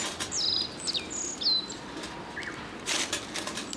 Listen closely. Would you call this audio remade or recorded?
recorded